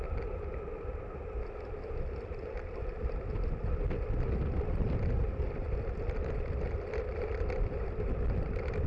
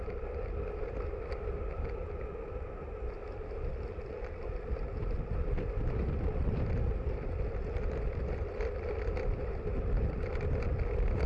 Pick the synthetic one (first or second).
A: first